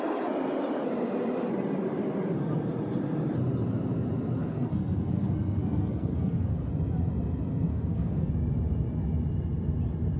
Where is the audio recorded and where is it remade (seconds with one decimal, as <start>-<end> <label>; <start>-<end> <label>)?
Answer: 0.0-4.4 recorded; 4.4-6.7 remade; 6.7-7.7 recorded; 7.7-8.3 remade; 8.3-10.2 recorded